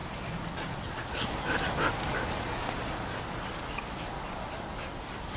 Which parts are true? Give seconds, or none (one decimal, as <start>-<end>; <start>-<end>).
0.0-5.4